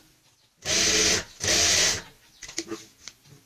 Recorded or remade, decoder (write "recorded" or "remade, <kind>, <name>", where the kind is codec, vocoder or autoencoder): recorded